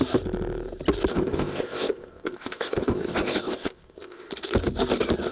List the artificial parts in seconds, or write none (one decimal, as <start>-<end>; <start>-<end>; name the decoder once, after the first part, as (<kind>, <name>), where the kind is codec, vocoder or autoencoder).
1.1-4.3 (codec, ZipCodec)

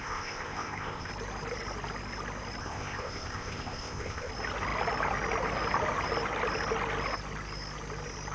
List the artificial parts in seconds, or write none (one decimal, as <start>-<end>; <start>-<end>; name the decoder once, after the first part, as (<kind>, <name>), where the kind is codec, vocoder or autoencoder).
0.0-1.1 (codec, ZipCodec); 2.6-4.3

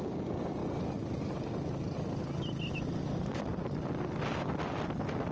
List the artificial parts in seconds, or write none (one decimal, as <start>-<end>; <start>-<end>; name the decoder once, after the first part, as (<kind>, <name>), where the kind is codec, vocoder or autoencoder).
none

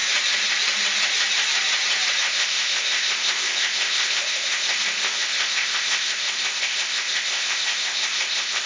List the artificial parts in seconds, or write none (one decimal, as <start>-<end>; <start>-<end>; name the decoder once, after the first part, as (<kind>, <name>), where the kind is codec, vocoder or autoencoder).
2.2-8.7 (codec, ZipCodec)